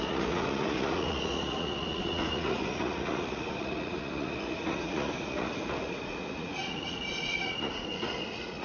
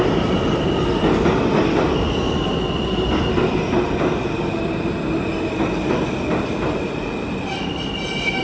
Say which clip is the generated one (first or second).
first